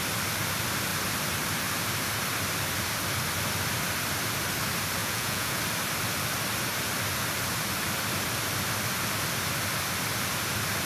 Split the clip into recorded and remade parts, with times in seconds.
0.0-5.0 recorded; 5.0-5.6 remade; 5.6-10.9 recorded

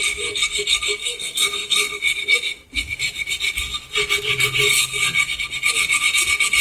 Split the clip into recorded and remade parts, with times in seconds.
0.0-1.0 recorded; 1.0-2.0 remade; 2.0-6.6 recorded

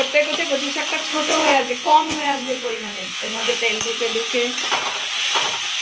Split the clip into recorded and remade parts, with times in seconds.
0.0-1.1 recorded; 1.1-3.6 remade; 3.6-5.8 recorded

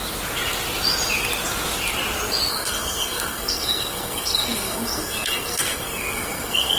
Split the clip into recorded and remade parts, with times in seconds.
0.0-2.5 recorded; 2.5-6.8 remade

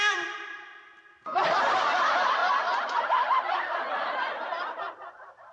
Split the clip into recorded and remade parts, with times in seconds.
0.0-2.4 remade; 2.4-3.0 recorded; 3.0-5.5 remade